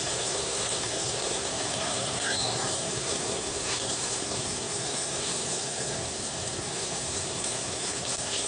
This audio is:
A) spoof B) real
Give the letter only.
A